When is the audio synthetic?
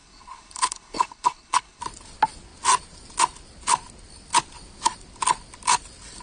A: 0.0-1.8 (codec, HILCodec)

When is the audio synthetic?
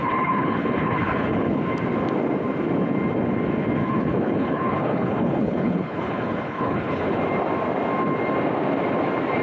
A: 0.0-1.6 (codec, HILCodec); 3.8-7.2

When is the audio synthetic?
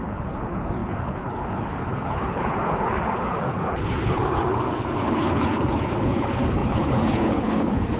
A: 0.0-8.0 (codec, HILCodec)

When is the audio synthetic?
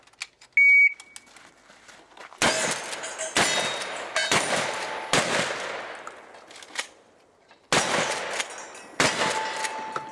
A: none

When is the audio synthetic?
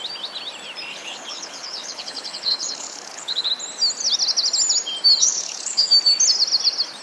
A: 0.9-3.5 (codec, HILCodec); 5.2-5.9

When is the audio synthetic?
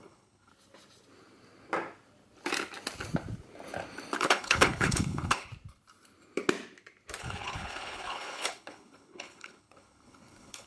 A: 0.0-0.5 (codec, HILCodec); 4.2-5.5; 7.2-10.7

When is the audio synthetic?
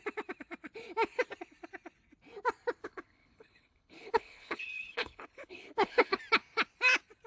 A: 2.8-6.2 (codec, HILCodec)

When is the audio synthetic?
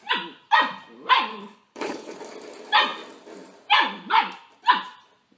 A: 1.3-2.2 (codec, HILCodec)